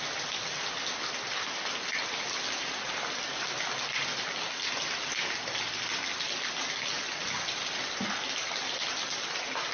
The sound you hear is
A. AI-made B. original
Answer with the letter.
B